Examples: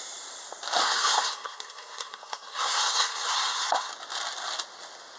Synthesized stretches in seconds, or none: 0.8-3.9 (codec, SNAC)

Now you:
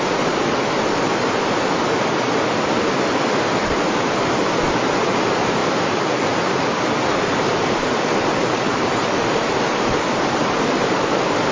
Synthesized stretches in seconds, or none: 0.0-1.8 (vocoder, BigVGAN v2); 3.6-5.6; 7.1-11.5